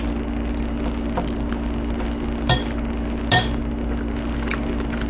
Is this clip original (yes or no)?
yes